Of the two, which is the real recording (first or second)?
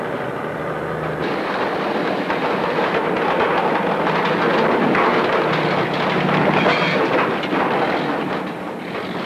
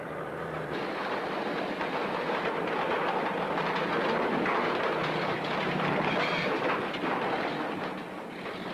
first